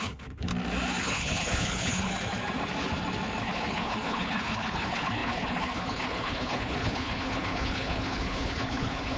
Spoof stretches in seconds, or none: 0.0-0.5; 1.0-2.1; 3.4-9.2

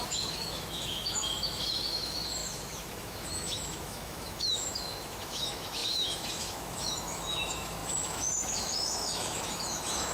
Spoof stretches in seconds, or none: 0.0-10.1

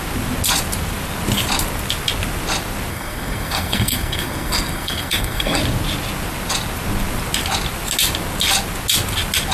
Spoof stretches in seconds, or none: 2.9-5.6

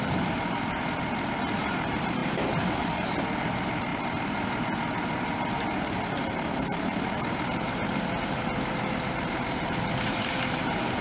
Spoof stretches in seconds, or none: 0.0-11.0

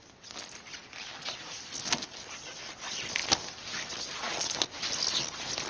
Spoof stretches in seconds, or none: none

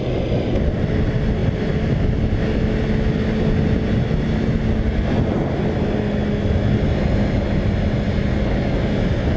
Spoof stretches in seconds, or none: none

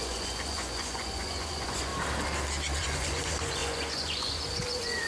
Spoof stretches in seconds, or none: 0.0-1.9; 2.8-5.1